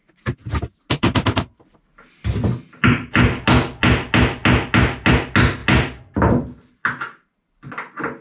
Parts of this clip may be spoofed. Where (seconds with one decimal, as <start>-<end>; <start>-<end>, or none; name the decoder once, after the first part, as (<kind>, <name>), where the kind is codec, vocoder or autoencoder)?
none